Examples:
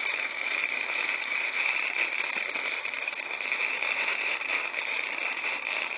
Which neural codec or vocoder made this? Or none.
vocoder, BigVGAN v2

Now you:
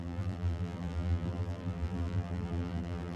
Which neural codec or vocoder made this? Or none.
vocoder, BigVGAN v2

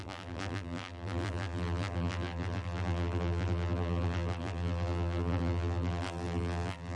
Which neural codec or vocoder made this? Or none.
vocoder, BigVGAN v2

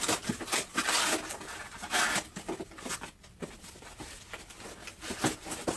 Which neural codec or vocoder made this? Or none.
none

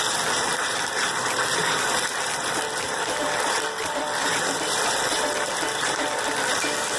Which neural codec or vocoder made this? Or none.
vocoder, BigVGAN v2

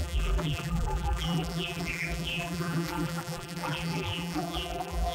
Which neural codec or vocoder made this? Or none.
vocoder, BigVGAN v2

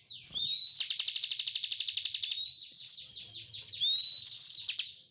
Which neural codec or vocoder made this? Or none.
none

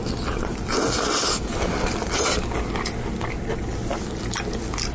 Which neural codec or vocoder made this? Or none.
none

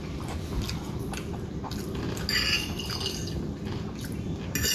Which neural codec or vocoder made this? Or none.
none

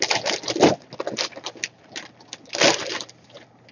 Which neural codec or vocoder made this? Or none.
none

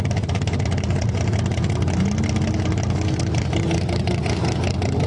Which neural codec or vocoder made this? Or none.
none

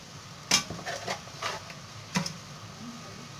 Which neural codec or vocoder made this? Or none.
none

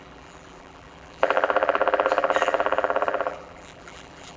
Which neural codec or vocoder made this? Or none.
vocoder, BigVGAN v2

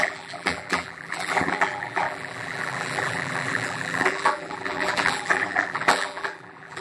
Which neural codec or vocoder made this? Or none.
vocoder, BigVGAN v2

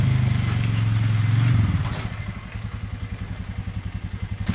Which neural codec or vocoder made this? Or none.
none